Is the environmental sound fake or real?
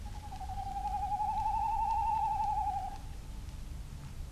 real